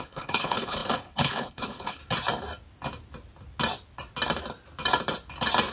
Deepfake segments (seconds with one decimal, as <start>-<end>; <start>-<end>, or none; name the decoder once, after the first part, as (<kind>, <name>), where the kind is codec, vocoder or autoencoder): 0.0-2.0 (codec, HILCodec)